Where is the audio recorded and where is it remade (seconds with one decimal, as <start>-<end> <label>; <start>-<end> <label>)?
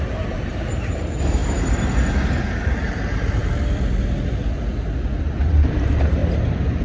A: 0.0-1.4 remade; 1.4-2.6 recorded; 2.6-3.4 remade; 3.4-5.2 recorded; 5.2-6.2 remade; 6.2-6.8 recorded